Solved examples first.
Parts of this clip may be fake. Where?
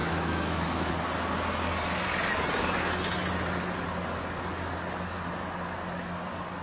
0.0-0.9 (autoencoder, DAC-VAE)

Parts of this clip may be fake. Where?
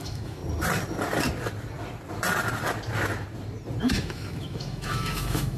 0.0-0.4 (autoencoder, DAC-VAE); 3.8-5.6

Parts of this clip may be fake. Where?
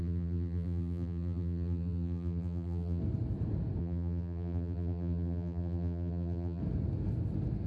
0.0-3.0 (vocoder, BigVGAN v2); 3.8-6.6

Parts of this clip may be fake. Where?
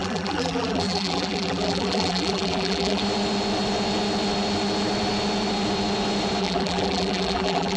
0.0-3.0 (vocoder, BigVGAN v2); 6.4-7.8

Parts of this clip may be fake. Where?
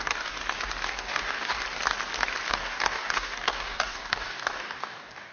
0.0-0.4 (codec, DAC); 0.9-1.6; 2.5-5.3